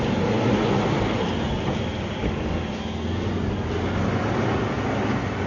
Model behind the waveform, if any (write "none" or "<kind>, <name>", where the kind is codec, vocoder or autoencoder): none